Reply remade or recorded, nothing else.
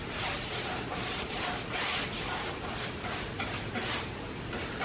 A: recorded